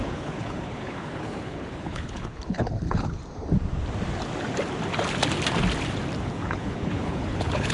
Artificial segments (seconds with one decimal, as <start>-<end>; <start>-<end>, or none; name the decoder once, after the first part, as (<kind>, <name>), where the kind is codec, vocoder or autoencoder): 0.0-3.2 (codec, HILCodec); 6.3-7.7